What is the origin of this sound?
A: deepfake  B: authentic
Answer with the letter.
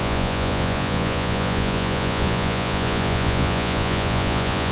A